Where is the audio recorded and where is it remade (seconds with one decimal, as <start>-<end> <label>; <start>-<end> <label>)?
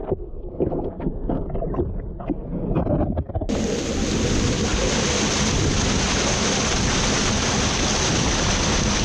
0.0-1.4 remade; 1.4-9.0 recorded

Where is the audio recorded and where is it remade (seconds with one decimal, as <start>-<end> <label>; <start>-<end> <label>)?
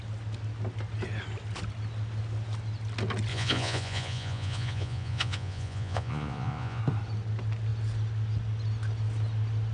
0.0-3.3 recorded; 3.3-6.8 remade; 6.8-9.7 recorded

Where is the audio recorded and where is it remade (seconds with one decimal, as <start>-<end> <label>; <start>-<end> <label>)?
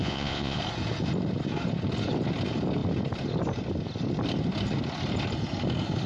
0.0-0.6 remade; 0.6-6.1 recorded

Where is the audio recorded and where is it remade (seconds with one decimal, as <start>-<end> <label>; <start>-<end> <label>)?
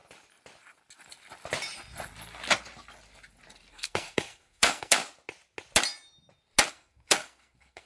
0.0-3.7 recorded; 3.7-5.0 remade; 5.0-6.7 recorded; 6.7-7.9 remade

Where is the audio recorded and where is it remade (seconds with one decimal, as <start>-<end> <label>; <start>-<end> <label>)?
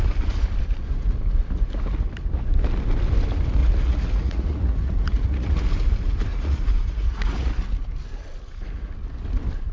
0.0-3.6 recorded; 3.6-5.6 remade; 5.6-6.3 recorded; 6.3-7.5 remade; 7.5-9.7 recorded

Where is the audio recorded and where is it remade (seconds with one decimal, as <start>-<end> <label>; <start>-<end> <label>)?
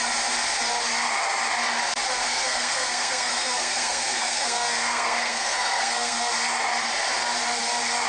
0.0-2.2 recorded; 2.2-6.3 remade; 6.3-8.1 recorded